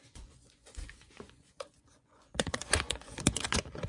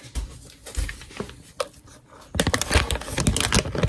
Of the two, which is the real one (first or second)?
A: second